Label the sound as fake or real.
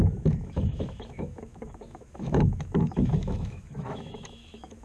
fake